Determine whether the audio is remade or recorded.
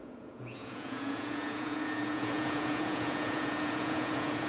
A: remade